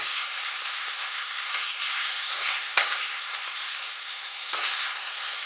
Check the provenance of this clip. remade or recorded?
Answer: remade